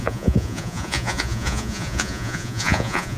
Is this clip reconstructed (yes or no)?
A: yes